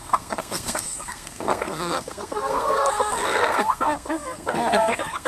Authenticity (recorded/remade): remade